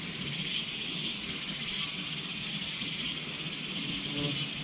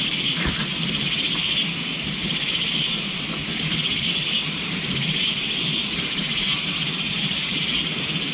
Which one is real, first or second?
first